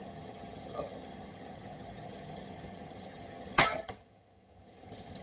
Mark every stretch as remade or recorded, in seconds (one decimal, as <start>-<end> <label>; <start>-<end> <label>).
0.0-5.2 remade